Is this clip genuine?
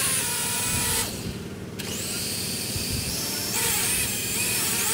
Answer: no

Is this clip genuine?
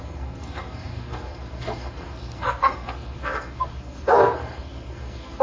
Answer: no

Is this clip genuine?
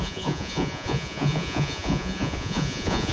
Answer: no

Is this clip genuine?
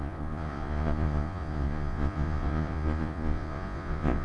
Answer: no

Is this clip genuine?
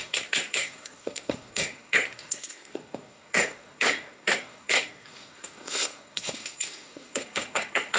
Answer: no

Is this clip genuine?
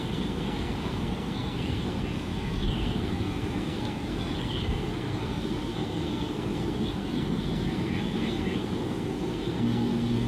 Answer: no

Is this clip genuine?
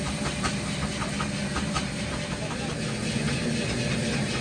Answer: yes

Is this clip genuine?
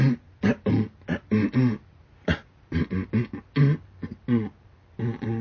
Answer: yes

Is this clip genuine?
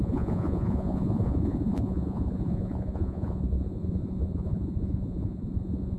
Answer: no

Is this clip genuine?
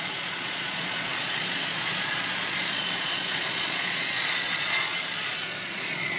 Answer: no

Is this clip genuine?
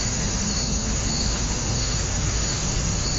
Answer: no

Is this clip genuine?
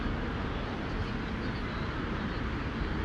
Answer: yes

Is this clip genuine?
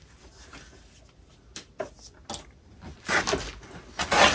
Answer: yes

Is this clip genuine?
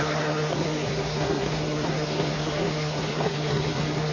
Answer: no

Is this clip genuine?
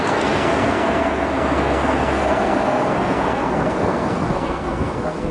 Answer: no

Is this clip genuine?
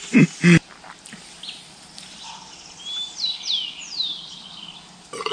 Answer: yes